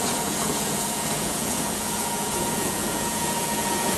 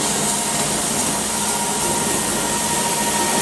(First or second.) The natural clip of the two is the second